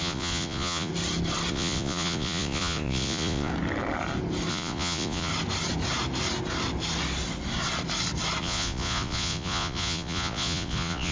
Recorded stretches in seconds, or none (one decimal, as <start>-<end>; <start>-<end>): 0.9-1.5; 3.5-4.5; 5.3-8.4